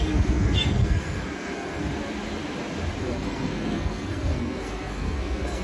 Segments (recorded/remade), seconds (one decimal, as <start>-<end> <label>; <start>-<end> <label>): 0.0-1.8 remade; 1.8-3.0 recorded; 3.0-5.6 remade